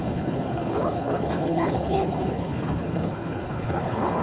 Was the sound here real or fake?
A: fake